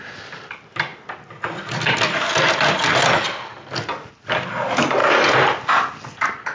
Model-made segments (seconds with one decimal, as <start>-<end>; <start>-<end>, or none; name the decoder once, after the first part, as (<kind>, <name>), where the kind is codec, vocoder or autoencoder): none